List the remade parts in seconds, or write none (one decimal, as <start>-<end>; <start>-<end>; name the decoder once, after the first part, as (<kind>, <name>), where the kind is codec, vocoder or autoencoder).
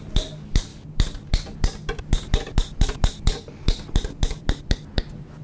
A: none